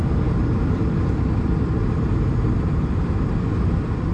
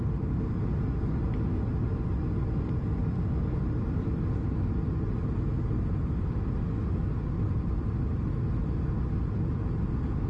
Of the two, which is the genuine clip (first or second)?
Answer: second